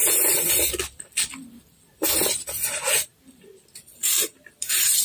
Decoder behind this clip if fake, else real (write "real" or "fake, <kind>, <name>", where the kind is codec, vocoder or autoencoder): fake, vocoder, BigVGAN v2